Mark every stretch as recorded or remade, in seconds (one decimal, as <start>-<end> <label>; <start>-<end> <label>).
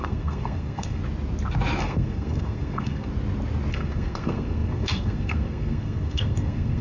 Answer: 0.0-1.0 remade; 1.0-1.8 recorded; 1.8-3.1 remade; 3.1-3.7 recorded; 3.7-6.8 remade